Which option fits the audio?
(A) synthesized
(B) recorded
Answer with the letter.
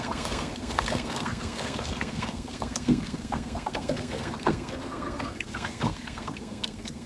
A